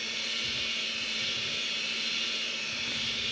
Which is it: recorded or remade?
remade